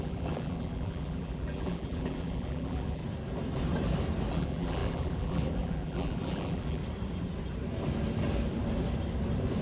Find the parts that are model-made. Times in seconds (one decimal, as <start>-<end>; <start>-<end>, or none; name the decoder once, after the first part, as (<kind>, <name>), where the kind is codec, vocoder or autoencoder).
0.0-3.0 (vocoder, BigVGAN v2); 4.3-6.8